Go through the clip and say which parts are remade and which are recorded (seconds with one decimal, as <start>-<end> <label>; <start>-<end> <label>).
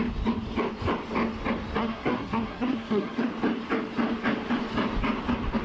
0.0-1.8 recorded; 1.8-3.3 remade; 3.3-5.6 recorded